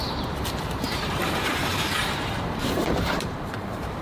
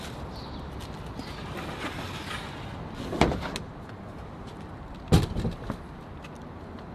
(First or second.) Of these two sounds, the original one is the second